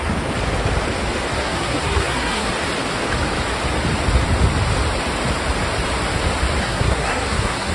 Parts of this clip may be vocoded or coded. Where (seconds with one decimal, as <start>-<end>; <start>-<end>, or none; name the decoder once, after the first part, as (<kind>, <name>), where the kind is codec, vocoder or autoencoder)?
1.4-2.5 (codec, SNAC); 6.6-7.7